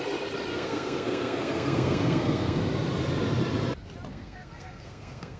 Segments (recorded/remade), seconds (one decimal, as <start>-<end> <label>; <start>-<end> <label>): 0.0-0.5 recorded; 0.5-2.6 remade; 2.6-4.1 recorded; 4.1-5.4 remade